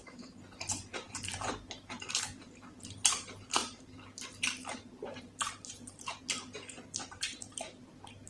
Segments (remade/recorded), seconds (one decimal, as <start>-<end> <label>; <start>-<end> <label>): 0.0-8.3 remade